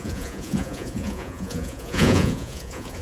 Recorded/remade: remade